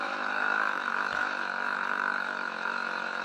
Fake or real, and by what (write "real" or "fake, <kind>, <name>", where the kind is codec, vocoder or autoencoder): fake, autoencoder, DAC-VAE